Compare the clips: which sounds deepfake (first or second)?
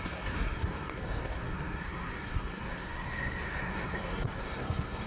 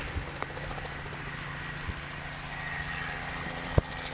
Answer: first